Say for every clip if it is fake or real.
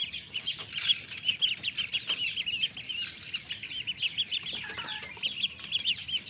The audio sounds real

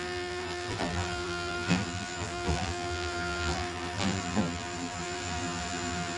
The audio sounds fake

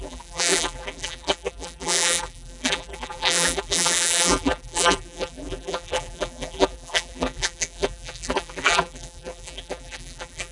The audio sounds fake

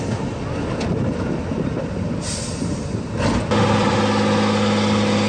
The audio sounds real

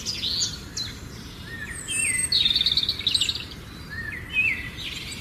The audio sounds real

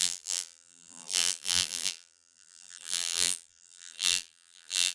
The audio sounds fake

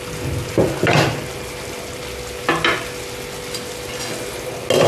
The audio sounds real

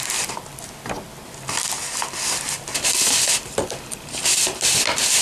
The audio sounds real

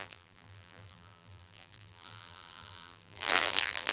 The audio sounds fake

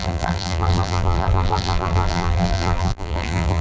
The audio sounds fake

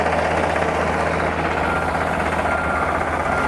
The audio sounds real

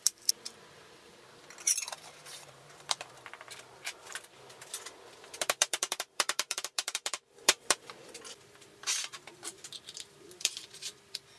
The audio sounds fake